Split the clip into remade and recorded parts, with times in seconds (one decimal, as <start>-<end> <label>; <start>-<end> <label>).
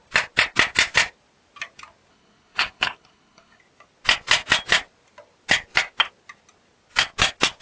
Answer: 0.0-2.1 recorded; 2.1-3.6 remade; 3.6-7.6 recorded